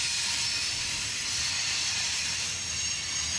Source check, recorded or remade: recorded